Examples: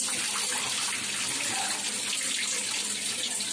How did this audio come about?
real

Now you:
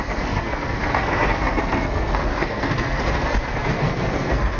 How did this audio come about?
fake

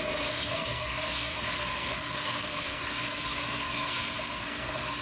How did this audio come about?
fake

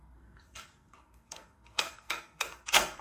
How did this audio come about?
fake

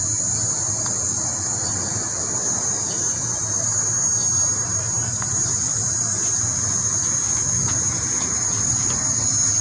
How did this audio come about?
real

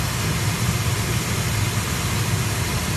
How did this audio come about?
real